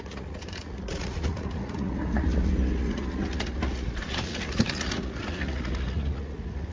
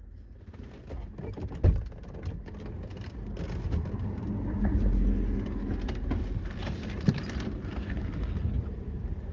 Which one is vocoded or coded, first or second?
first